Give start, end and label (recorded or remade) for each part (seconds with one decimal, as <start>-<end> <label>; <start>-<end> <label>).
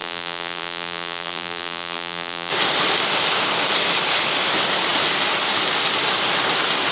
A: 0.0-2.5 remade; 2.5-6.9 recorded